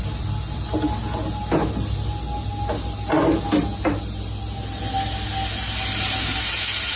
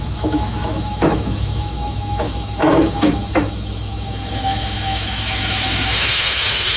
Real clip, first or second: first